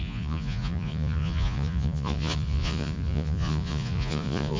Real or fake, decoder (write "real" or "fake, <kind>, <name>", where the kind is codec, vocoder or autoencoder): fake, vocoder, Vocos